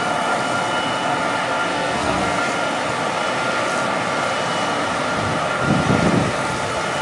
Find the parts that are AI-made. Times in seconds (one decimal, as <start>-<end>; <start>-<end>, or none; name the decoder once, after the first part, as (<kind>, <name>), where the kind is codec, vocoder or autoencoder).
1.7-2.4 (codec, SNAC)